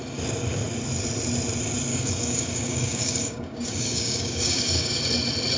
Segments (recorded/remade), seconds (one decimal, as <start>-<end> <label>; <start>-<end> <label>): 0.0-1.9 recorded; 1.9-5.0 remade; 5.0-5.6 recorded